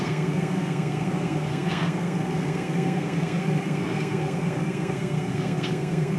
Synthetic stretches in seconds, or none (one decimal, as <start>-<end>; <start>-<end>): 0.0-6.2